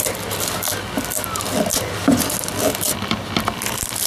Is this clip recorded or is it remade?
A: recorded